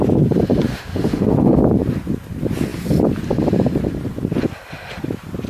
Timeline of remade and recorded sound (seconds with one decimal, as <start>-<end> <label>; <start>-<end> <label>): 0.0-0.7 recorded; 0.7-1.6 remade; 1.6-5.5 recorded